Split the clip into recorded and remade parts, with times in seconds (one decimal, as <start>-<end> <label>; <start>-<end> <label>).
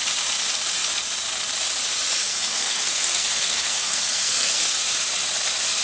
0.0-2.2 recorded; 2.2-4.8 remade; 4.8-5.8 recorded